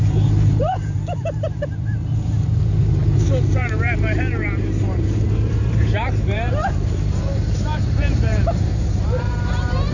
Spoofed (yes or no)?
yes